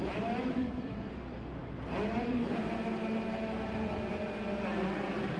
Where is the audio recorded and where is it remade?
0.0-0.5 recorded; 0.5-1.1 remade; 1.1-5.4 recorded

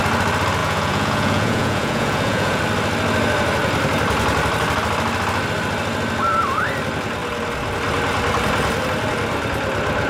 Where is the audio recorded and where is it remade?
0.0-0.6 recorded; 0.6-2.6 remade; 2.6-10.1 recorded